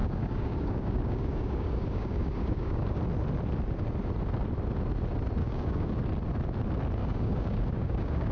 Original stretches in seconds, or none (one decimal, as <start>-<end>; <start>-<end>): 3.0-5.4; 5.9-7.0